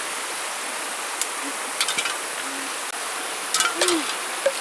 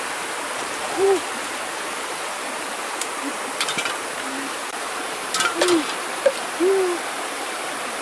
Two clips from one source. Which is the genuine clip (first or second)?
first